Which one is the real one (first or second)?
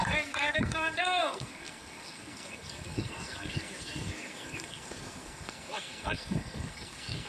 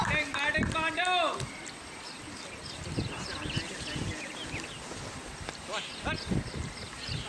second